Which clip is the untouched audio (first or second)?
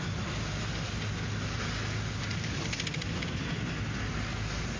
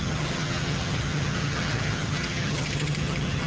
first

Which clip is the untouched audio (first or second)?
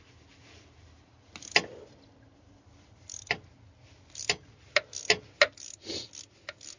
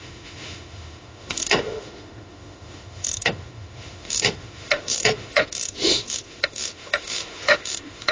first